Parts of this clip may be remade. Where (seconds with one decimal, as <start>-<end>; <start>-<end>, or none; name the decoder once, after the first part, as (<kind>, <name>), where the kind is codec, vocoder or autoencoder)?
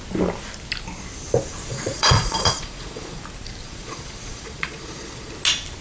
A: 1.7-3.2 (vocoder, Vocos); 3.6-5.3